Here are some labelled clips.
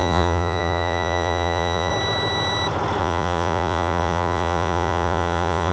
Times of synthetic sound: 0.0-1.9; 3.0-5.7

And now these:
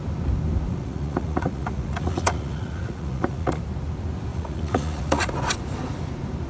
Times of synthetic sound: 0.7-3.6; 4.3-5.3

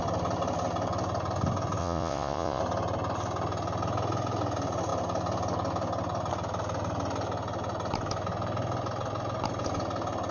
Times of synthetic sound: 1.8-2.6

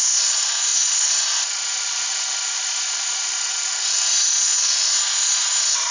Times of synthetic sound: 0.7-3.9; 4.5-5.0; 5.4-5.9

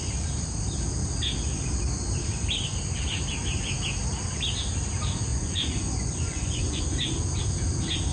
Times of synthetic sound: 5.3-6.8

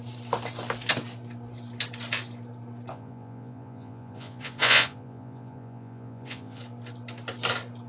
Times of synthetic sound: 2.9-6.6